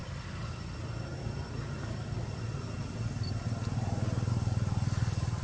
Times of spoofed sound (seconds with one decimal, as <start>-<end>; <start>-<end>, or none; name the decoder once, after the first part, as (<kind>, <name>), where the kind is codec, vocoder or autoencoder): 0.0-0.5 (vocoder, BigVGAN v2)